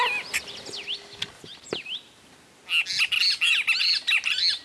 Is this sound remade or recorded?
recorded